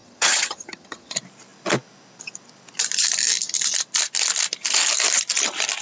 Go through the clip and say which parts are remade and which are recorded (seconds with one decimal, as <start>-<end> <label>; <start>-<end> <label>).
0.0-1.1 remade; 1.1-5.8 recorded